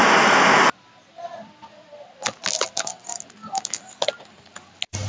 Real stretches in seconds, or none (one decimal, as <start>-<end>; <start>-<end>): 0.0-5.1